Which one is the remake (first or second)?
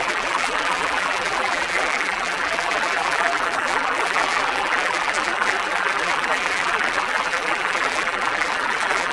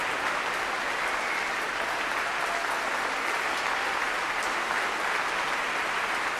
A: first